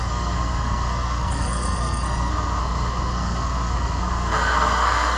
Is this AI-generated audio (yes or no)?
yes